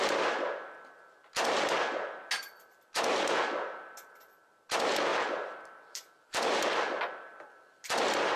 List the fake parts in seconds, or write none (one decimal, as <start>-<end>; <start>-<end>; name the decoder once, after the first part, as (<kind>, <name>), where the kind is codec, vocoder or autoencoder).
5.1-8.0 (vocoder, BigVGAN v2)